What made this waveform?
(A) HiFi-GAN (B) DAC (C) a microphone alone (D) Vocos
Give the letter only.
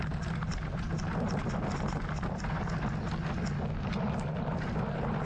C